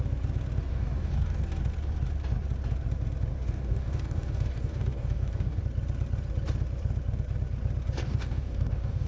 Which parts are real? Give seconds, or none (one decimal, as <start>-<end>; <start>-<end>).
0.0-0.7; 1.4-3.3; 5.6-8.0